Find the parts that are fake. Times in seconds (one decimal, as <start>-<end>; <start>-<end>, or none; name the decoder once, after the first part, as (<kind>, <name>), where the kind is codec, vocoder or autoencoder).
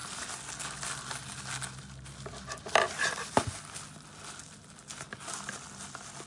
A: none